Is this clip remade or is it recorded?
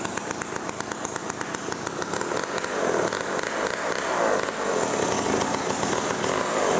recorded